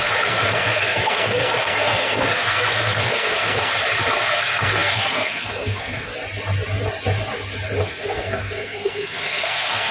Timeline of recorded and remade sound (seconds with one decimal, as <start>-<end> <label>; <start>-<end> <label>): 0.0-3.7 remade; 3.7-4.3 recorded; 4.3-6.1 remade; 6.1-7.8 recorded; 7.8-9.9 remade